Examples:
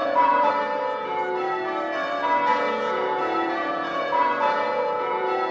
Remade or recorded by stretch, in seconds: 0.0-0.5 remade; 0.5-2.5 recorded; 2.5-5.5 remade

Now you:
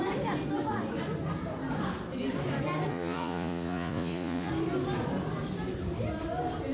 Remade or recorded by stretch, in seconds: 0.0-2.9 recorded; 2.9-4.5 remade; 4.5-6.7 recorded